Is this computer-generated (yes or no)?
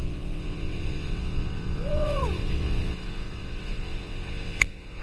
yes